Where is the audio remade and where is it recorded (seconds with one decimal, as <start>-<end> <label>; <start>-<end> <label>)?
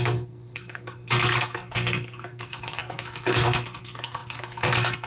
0.0-5.1 remade